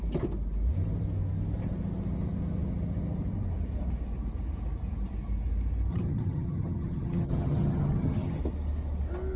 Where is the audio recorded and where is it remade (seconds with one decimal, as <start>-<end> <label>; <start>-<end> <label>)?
0.0-5.9 recorded; 5.9-8.4 remade; 8.4-9.4 recorded